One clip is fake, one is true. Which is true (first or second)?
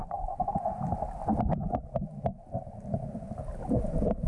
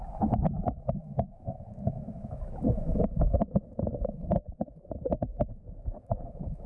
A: first